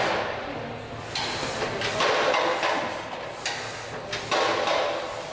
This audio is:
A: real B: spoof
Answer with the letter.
A